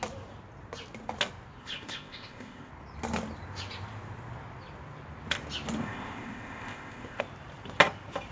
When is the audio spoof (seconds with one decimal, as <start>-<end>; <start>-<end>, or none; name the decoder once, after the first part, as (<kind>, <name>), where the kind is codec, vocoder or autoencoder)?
1.6-2.7 (codec, ZipCodec); 5.8-7.2